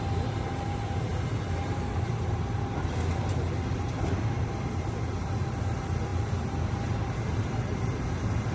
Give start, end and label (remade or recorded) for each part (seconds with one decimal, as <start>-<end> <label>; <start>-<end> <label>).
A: 0.0-8.5 recorded